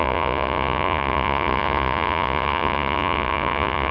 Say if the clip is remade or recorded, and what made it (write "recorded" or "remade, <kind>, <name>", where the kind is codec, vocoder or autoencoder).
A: remade, vocoder, Vocos